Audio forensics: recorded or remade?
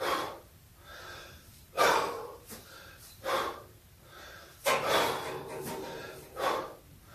remade